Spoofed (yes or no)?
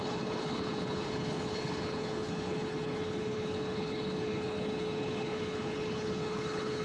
yes